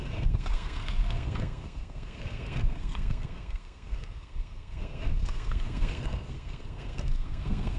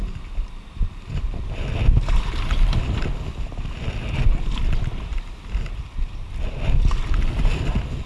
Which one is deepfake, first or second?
first